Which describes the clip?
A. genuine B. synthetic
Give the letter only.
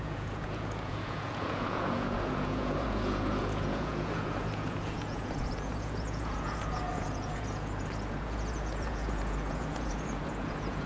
B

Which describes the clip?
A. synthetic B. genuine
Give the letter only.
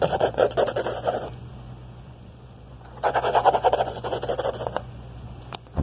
A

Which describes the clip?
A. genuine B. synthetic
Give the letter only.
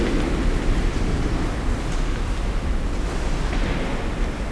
A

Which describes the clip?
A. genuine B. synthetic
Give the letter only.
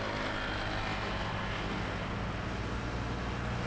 A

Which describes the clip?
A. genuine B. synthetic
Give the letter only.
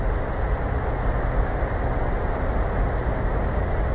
A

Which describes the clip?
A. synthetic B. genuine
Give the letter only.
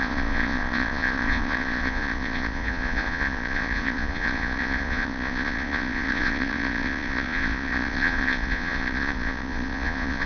A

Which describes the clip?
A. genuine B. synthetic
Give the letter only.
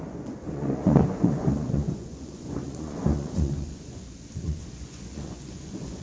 B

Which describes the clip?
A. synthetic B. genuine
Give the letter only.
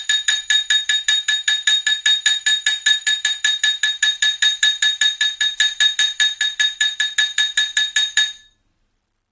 B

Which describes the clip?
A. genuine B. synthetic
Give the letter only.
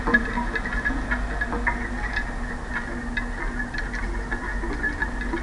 A